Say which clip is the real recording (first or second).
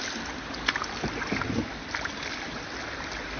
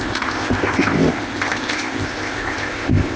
first